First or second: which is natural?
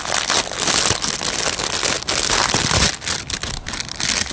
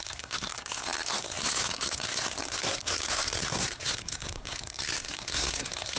first